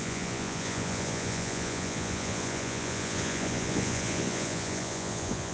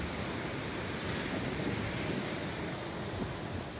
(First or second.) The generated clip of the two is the first